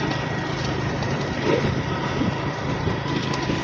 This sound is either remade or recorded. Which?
recorded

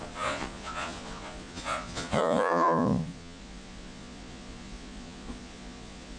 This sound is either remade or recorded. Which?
remade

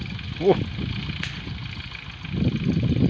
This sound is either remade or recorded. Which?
recorded